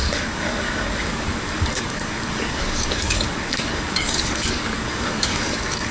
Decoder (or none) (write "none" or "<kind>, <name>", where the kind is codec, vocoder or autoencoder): codec, DAC